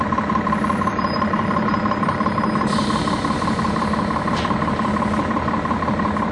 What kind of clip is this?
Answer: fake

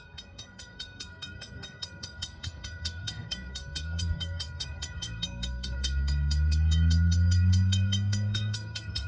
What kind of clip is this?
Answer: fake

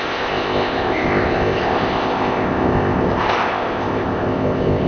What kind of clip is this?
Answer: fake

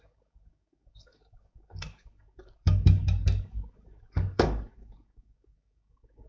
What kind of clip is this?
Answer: fake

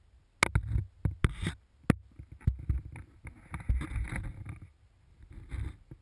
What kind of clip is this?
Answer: real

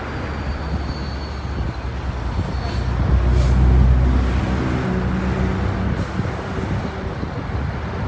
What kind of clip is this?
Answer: real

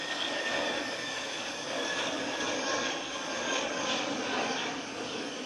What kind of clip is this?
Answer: fake